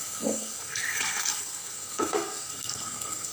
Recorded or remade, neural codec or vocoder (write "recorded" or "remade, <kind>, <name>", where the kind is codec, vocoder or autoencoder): remade, codec, SNAC